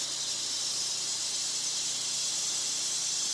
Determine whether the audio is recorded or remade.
recorded